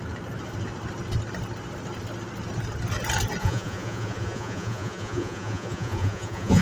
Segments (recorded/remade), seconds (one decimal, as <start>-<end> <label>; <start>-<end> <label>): 0.0-3.4 recorded; 3.4-6.6 remade